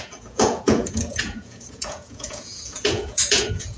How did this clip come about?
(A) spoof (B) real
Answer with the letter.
A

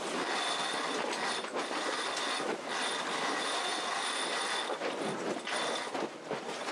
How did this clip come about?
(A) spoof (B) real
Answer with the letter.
B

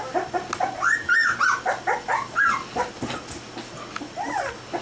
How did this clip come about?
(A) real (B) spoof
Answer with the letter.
A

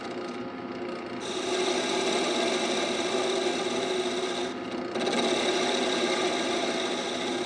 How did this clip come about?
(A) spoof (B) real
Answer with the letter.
B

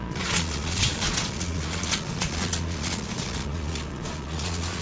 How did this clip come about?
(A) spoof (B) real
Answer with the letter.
A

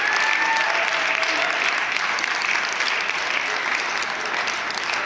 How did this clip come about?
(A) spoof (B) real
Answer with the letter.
B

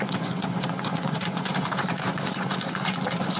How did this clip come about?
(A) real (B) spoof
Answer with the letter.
B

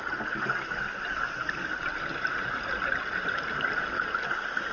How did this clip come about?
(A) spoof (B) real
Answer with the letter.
B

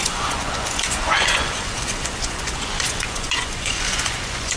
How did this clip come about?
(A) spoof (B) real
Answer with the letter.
A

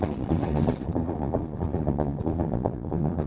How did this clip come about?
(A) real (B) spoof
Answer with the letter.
B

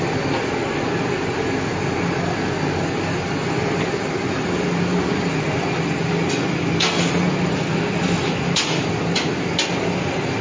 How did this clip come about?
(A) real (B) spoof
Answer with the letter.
A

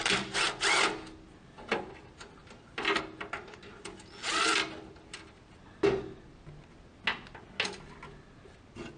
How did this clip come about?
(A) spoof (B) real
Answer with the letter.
B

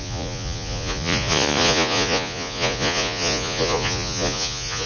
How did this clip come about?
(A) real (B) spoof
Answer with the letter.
B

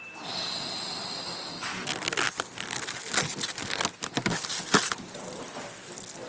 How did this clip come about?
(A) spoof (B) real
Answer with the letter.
B